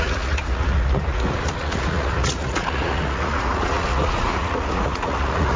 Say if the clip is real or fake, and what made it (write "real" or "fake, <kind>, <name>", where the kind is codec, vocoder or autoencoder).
fake, vocoder, Vocos